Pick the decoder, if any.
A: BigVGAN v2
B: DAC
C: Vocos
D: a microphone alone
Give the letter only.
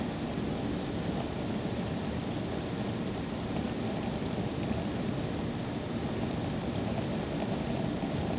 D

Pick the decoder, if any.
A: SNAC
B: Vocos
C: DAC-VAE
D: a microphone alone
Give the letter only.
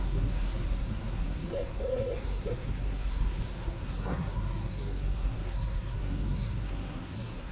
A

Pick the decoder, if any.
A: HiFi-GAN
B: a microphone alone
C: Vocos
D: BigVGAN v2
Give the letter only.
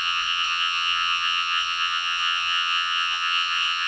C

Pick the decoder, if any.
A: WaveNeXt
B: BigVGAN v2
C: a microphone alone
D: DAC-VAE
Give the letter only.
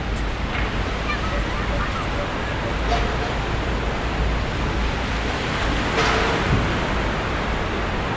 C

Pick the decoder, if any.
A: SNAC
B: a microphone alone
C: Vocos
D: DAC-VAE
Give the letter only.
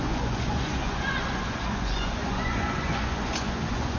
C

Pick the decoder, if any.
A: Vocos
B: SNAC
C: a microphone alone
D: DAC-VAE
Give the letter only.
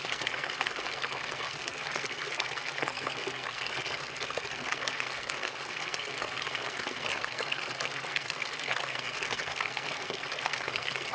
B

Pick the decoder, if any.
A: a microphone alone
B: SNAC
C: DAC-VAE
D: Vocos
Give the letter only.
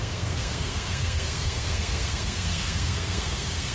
B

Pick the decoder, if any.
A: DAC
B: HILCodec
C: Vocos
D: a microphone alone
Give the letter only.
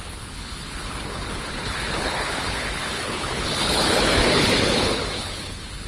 B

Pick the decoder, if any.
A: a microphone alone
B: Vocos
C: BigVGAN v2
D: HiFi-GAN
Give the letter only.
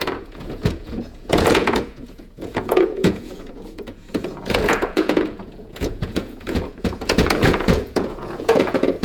B